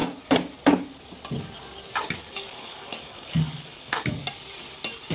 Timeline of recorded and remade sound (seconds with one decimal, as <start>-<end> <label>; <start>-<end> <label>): 0.0-2.2 recorded; 2.2-4.2 remade; 4.2-5.1 recorded